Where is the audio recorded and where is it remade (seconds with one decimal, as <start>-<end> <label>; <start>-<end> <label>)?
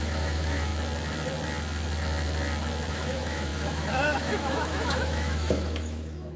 0.0-0.7 remade; 0.7-2.9 recorded; 2.9-6.4 remade